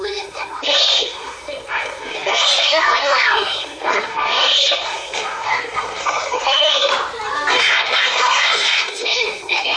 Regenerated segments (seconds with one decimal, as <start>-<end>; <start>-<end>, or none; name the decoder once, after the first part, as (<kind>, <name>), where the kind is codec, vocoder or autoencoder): 0.0-6.9 (codec, SNAC); 7.5-9.8